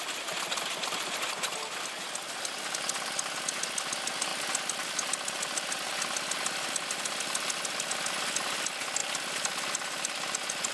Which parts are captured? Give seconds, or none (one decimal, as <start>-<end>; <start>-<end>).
0.0-10.7